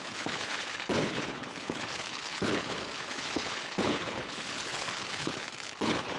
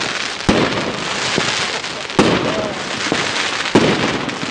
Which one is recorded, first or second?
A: second